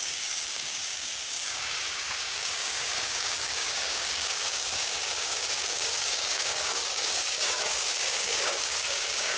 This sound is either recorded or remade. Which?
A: remade